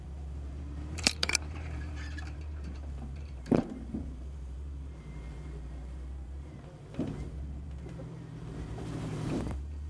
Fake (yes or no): yes